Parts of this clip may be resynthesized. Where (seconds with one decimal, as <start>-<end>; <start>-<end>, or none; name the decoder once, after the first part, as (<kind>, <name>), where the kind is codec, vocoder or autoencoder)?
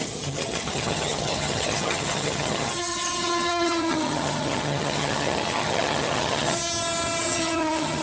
0.0-6.6 (vocoder, HiFi-GAN); 7.2-8.0